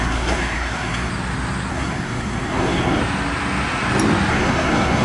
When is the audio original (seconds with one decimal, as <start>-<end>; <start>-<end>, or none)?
1.1-1.7; 3.0-4.3